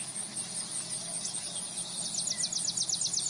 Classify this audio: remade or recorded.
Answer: recorded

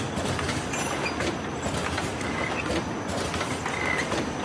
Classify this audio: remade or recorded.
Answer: recorded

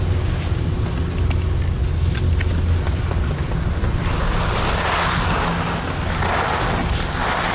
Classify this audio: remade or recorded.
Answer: recorded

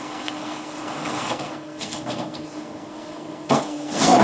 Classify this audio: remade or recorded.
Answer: remade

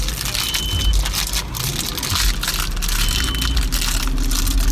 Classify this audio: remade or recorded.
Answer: recorded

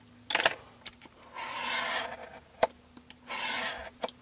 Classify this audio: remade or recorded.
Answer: recorded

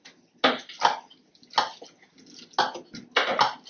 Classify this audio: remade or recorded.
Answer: recorded